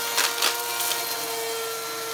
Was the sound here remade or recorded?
recorded